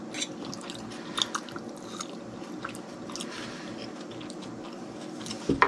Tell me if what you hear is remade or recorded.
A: recorded